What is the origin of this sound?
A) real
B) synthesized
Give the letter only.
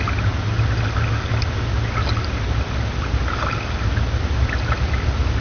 A